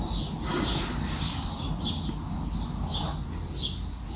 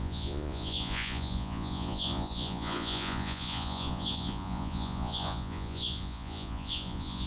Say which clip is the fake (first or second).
second